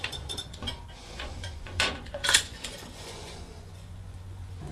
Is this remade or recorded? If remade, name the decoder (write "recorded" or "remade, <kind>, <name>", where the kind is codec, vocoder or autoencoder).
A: remade, vocoder, Vocos